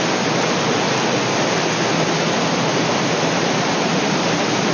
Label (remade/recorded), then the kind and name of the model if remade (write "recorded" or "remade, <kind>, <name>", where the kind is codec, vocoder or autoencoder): recorded